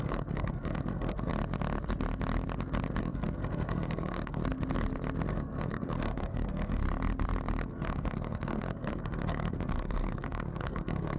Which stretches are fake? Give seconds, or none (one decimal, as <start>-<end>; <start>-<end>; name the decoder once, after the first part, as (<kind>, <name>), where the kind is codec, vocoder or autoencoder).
0.0-1.3 (codec, SNAC); 3.0-4.4; 5.3-6.8; 7.6-11.2